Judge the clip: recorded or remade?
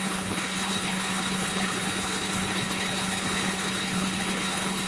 remade